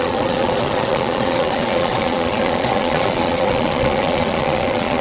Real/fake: fake